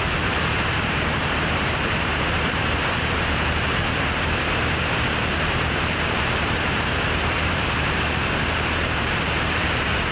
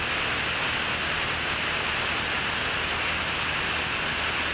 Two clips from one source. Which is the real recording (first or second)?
second